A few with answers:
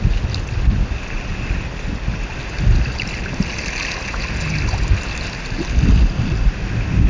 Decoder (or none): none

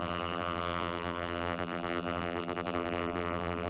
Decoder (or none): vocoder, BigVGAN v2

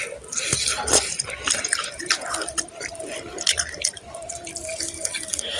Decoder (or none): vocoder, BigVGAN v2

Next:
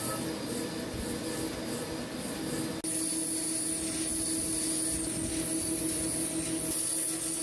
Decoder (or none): none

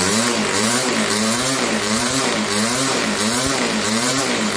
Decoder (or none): vocoder, BigVGAN v2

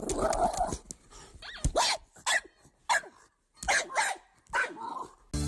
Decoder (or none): none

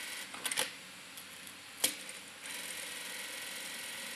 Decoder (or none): none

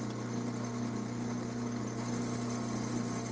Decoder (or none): none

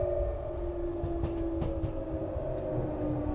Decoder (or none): none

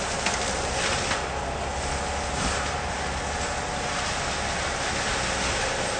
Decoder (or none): none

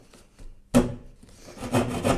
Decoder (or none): none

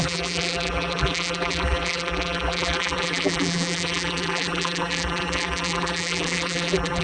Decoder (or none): vocoder, BigVGAN v2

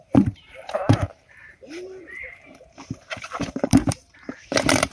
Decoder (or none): vocoder, BigVGAN v2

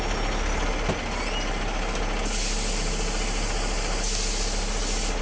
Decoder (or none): none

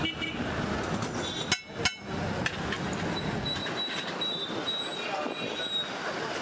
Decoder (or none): none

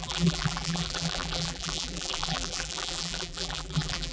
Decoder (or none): vocoder, BigVGAN v2